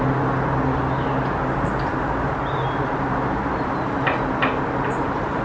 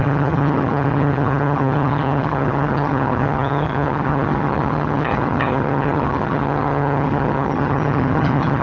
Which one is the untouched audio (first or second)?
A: first